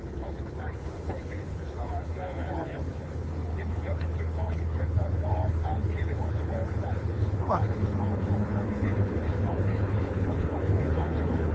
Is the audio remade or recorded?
remade